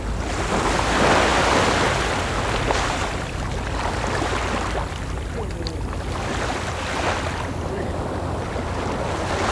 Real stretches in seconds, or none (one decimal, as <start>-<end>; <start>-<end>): 0.0-9.5